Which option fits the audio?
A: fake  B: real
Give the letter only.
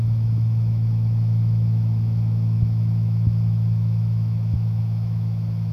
A